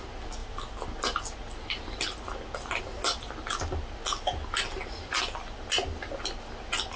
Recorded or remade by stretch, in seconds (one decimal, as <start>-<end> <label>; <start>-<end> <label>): 0.0-7.0 recorded